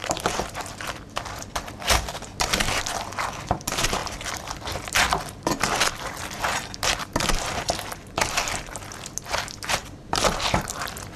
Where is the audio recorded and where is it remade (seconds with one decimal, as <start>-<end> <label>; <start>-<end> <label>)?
0.0-2.8 remade; 2.8-4.0 recorded; 4.0-6.1 remade; 6.1-9.8 recorded; 9.8-11.2 remade